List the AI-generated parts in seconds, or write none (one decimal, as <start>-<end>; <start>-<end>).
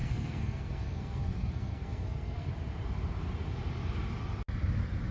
0.0-2.5